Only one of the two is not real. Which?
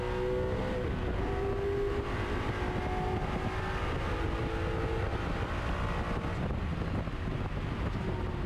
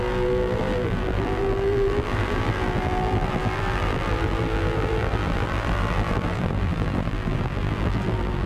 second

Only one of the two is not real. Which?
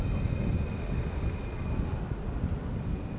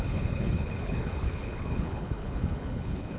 second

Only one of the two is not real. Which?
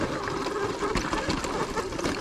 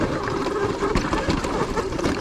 second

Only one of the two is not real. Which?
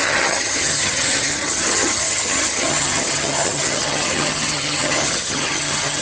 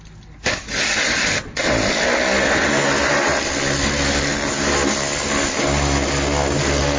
first